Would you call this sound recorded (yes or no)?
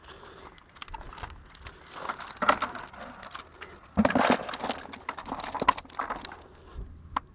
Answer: yes